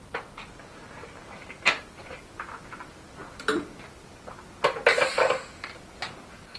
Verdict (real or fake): real